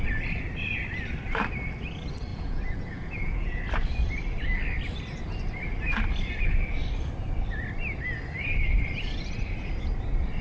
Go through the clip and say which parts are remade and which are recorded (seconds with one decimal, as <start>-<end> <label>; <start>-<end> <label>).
0.0-2.3 recorded; 2.3-3.6 remade; 3.6-10.4 recorded